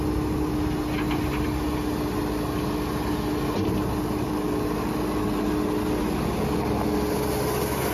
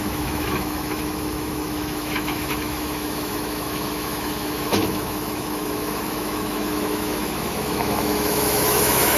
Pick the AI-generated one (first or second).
second